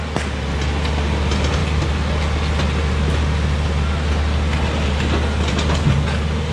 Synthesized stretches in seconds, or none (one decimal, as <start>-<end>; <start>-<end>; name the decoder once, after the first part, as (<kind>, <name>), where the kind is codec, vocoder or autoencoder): none

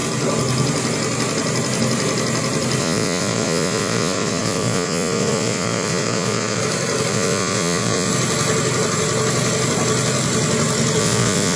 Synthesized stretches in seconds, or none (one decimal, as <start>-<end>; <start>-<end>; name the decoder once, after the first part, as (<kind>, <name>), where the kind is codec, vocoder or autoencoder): 2.8-6.6 (vocoder, Vocos); 7.1-8.1; 11.0-11.6

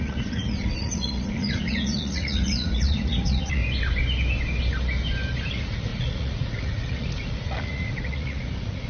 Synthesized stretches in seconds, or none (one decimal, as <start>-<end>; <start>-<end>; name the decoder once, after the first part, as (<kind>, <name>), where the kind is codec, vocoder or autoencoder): 0.0-3.6 (vocoder, Vocos); 5.5-8.9

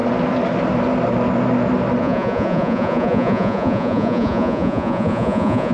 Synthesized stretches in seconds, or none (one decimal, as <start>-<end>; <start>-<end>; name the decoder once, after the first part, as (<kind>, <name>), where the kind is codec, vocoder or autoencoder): 2.0-5.7 (vocoder, Vocos)